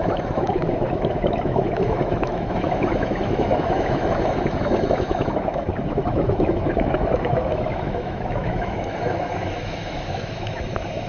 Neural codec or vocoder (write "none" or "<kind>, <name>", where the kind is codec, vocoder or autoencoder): autoencoder, DAC-VAE